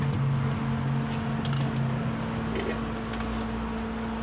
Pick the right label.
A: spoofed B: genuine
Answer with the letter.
B